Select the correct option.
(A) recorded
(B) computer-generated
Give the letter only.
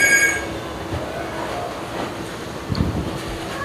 A